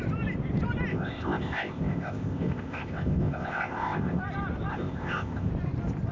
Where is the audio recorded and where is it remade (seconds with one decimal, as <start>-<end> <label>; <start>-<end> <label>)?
0.0-0.9 recorded; 0.9-4.2 remade; 4.2-4.7 recorded; 4.7-5.5 remade; 5.5-6.1 recorded